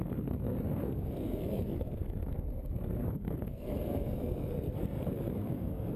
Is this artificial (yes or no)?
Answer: yes